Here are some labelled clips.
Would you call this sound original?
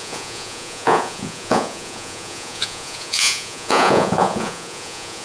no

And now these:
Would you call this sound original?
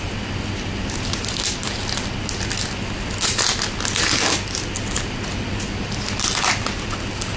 yes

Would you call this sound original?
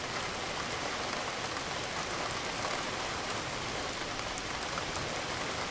yes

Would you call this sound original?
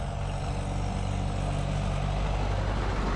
yes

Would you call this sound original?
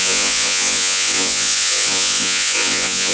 no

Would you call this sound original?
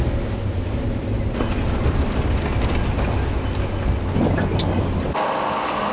yes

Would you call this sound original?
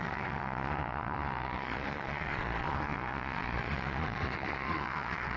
no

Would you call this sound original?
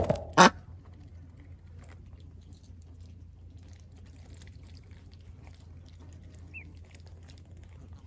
yes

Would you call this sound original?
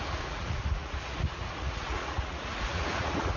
no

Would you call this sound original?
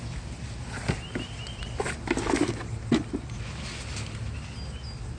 yes